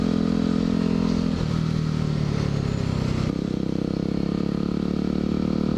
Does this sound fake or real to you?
real